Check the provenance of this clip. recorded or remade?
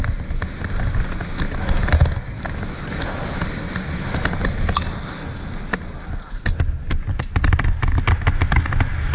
recorded